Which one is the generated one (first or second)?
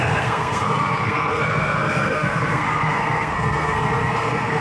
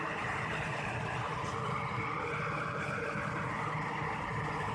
first